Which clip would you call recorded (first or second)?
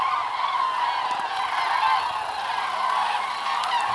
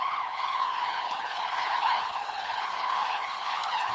first